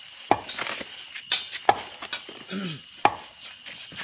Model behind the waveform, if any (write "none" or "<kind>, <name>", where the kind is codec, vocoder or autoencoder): none